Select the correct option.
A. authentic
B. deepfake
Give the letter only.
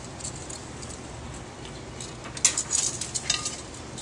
A